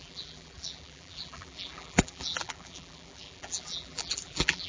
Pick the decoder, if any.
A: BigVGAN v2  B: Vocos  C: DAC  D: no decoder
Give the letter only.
A